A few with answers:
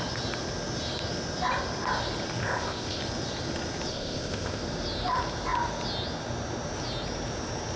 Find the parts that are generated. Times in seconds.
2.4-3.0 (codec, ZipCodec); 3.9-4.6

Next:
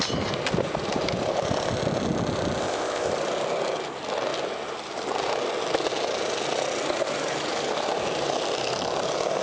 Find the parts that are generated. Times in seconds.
2.6-3.1 (codec, ZipCodec)